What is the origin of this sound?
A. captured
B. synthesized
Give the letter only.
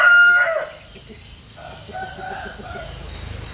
A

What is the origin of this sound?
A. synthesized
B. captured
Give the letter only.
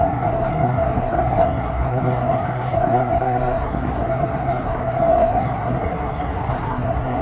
A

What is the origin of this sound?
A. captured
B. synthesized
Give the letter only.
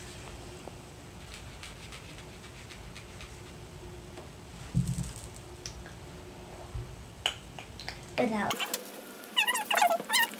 A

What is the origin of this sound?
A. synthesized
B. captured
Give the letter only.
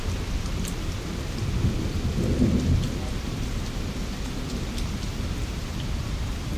B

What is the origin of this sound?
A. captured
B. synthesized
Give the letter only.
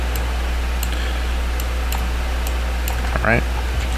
A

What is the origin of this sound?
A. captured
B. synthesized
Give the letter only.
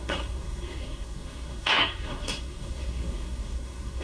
B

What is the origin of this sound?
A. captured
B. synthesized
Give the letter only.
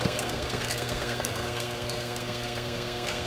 B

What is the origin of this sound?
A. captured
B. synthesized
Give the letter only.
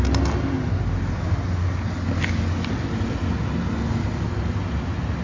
A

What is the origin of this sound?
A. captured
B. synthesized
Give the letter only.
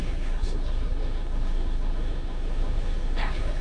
B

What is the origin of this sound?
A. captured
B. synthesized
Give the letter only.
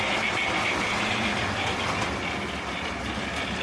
A